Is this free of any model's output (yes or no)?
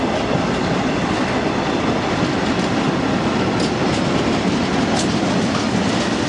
yes